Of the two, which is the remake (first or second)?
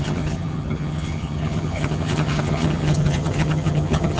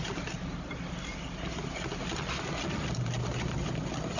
first